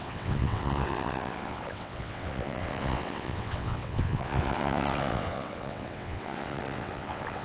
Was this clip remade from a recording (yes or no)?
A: yes